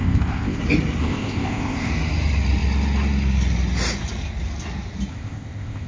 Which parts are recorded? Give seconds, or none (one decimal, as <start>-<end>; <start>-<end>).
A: 0.6-1.0; 1.9-5.1